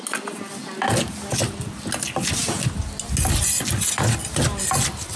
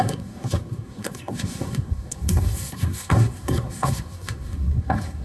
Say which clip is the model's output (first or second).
second